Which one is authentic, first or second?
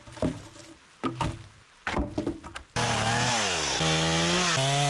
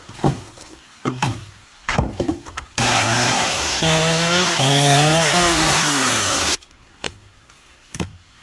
first